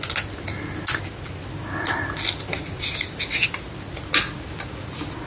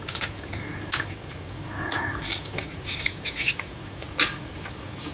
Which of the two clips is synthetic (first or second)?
second